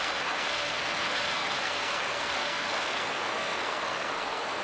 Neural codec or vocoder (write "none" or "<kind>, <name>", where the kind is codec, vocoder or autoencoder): codec, SNAC